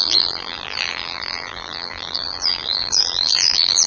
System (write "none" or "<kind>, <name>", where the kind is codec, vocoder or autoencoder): vocoder, BigVGAN v2